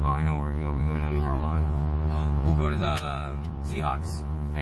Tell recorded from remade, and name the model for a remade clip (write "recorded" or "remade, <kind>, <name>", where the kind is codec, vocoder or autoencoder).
remade, vocoder, Vocos